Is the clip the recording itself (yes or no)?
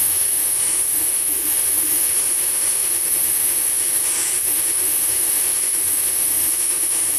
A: no